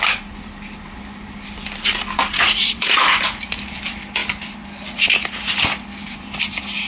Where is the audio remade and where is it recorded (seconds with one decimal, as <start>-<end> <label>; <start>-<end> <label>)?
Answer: 0.0-2.4 recorded; 2.4-3.6 remade; 3.6-6.9 recorded